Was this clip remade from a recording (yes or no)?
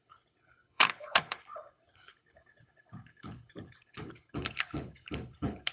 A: yes